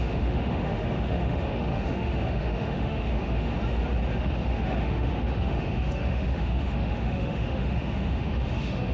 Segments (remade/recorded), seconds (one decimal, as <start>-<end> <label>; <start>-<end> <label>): 0.0-3.5 remade; 3.5-4.2 recorded; 4.2-8.9 remade